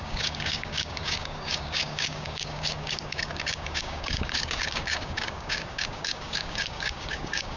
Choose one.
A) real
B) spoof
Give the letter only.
B